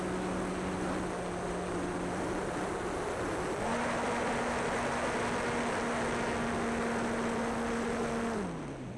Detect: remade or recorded recorded